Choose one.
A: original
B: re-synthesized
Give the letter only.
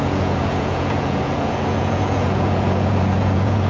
B